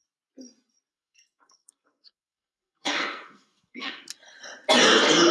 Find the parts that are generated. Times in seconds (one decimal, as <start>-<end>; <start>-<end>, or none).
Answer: 0.9-4.0